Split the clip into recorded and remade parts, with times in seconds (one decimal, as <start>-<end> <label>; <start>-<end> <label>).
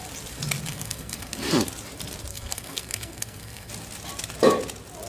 0.0-0.7 recorded; 0.7-1.5 remade; 1.5-2.3 recorded; 2.3-3.7 remade; 3.7-5.1 recorded